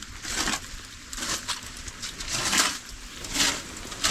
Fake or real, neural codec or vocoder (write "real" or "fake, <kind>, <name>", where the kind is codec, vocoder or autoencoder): real